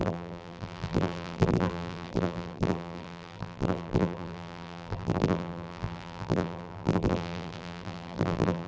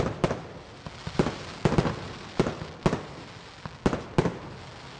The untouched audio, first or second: second